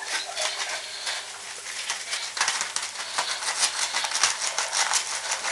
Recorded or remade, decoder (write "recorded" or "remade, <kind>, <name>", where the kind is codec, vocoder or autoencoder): recorded